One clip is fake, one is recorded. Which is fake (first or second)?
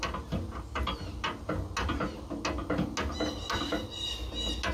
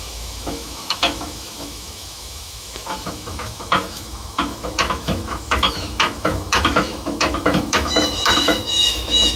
second